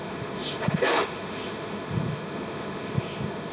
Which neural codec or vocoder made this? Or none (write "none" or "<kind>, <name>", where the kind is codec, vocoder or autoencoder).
autoencoder, DAC-VAE